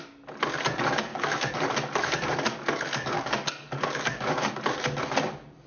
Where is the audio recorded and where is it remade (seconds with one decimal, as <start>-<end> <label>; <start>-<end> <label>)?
0.0-1.1 recorded; 1.1-4.5 remade; 4.5-5.7 recorded